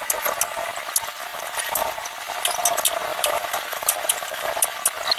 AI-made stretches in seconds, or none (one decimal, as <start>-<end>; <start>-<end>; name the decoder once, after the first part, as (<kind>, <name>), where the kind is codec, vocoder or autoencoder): 1.3-2.0 (vocoder, BigVGAN v2); 3.1-4.5